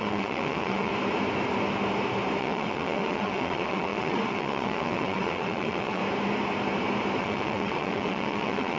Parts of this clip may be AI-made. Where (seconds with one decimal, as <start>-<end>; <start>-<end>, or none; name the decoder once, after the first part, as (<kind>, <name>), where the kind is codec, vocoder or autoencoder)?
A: 0.0-0.9 (vocoder, WaveNeXt); 2.4-6.0; 7.2-8.8